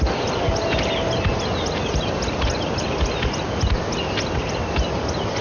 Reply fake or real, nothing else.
real